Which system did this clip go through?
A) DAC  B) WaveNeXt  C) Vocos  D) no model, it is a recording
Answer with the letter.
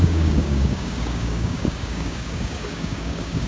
A